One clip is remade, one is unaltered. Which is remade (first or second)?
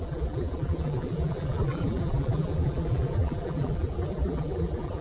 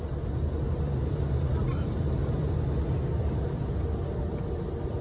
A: first